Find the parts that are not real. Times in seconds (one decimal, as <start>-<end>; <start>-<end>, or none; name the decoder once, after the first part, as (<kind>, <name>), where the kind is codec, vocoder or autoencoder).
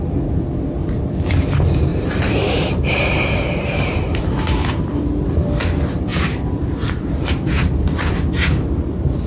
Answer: 1.9-5.0 (vocoder, BigVGAN v2); 6.1-8.3